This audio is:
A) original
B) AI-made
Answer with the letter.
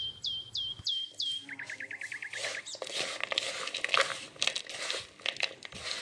A